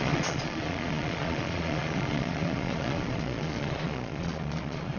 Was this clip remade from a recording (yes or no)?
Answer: yes